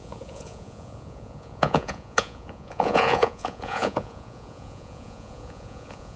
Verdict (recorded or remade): remade